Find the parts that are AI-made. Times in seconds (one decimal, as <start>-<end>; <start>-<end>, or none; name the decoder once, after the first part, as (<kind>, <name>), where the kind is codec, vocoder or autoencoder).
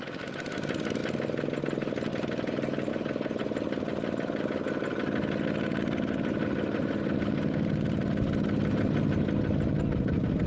none